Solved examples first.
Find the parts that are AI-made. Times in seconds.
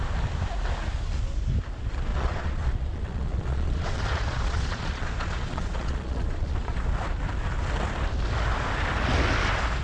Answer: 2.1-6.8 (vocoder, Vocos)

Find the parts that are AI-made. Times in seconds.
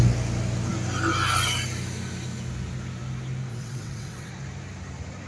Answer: 3.5-4.3 (vocoder, WaveNeXt)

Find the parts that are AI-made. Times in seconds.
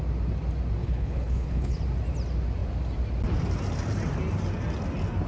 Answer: 0.8-1.8 (codec, HILCodec)